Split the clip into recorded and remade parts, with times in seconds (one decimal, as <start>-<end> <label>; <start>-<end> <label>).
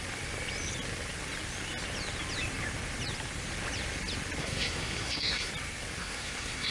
0.0-4.4 recorded; 4.4-5.5 remade; 5.5-6.0 recorded; 6.0-6.7 remade